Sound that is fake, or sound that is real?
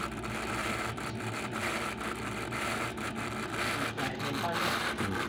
fake